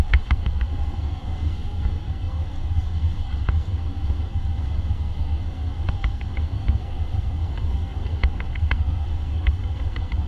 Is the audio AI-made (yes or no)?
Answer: yes